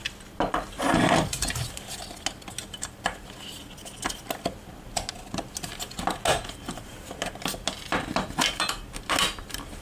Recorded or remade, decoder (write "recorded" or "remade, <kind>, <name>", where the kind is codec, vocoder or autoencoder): recorded